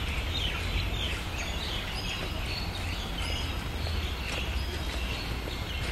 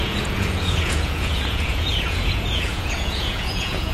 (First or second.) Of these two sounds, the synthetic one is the second